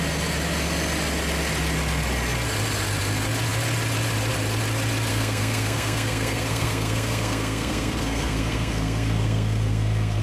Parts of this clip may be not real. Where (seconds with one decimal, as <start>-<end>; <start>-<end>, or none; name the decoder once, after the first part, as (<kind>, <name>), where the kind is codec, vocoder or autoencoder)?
5.1-10.2 (codec, SNAC)